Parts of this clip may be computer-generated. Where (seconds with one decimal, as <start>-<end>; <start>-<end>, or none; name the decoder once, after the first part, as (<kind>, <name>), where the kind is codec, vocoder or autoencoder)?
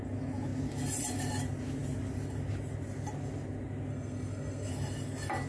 3.9-4.7 (codec, SNAC)